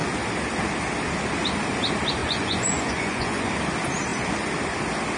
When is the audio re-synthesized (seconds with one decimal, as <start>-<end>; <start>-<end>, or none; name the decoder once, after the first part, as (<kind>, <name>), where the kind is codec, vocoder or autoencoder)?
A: 2.2-3.5 (vocoder, Vocos)